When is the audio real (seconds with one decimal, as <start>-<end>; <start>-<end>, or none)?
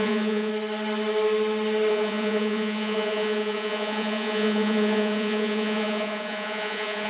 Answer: 0.5-1.9